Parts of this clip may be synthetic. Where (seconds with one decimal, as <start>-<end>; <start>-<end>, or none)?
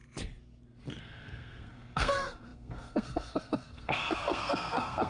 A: 1.0-5.1